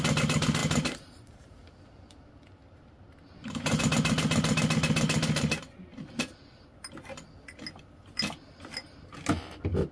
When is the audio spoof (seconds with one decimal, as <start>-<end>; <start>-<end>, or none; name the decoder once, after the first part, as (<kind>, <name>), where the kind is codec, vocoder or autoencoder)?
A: 0.6-2.2 (vocoder, BigVGAN v2); 2.6-3.8